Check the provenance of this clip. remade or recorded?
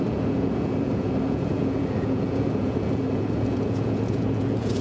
remade